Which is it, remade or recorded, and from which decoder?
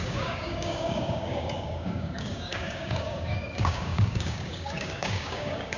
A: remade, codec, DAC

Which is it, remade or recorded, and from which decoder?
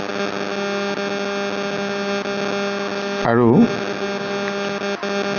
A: recorded